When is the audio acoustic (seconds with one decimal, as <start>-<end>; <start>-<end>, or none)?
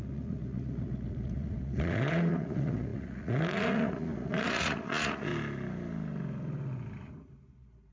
5.3-7.9